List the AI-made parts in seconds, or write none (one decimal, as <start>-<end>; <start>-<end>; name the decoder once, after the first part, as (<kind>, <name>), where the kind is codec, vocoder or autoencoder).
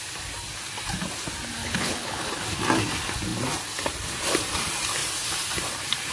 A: 1.6-2.3 (codec, HILCodec)